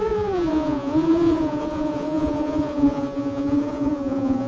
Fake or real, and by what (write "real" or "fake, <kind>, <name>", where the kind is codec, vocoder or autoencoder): fake, vocoder, Vocos